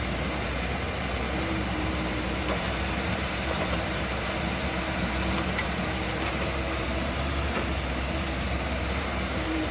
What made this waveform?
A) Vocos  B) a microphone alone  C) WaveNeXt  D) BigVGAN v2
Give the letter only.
D